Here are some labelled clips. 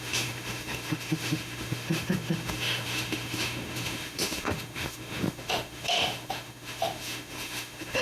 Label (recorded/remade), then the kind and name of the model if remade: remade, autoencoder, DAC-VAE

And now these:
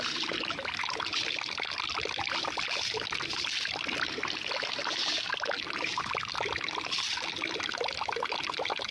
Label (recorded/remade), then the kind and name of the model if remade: recorded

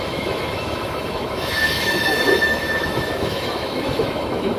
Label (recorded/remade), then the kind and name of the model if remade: remade, autoencoder, DAC-VAE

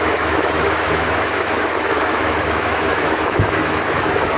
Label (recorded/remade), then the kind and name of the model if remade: remade, autoencoder, DAC-VAE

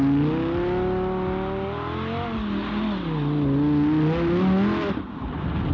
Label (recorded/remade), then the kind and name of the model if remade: recorded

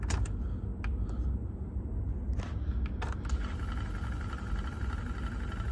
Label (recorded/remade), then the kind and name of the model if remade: recorded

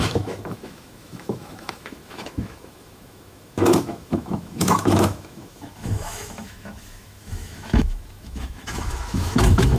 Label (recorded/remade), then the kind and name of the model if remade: remade, autoencoder, DAC-VAE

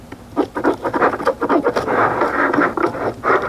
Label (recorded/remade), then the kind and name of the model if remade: recorded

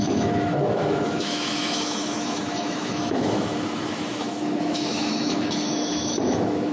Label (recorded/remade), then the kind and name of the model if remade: remade, autoencoder, DAC-VAE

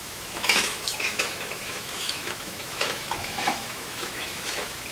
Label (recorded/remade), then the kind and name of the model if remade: remade, autoencoder, DAC-VAE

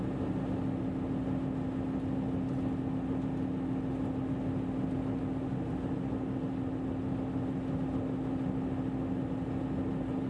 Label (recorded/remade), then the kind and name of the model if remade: recorded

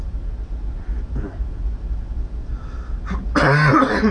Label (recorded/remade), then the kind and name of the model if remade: recorded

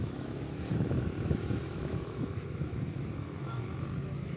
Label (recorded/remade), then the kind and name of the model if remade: remade, autoencoder, DAC-VAE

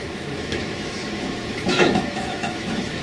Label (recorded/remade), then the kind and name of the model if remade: remade, autoencoder, DAC-VAE